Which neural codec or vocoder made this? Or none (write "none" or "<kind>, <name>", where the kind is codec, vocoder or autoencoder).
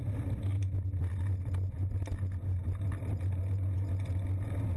none